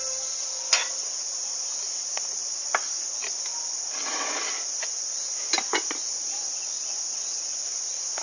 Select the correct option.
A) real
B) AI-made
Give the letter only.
A